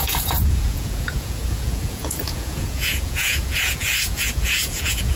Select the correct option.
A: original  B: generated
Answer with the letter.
B